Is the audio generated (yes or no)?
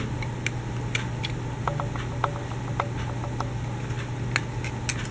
no